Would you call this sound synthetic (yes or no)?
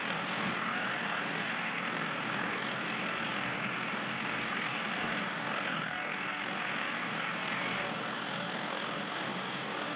yes